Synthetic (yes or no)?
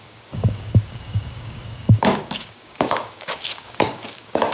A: yes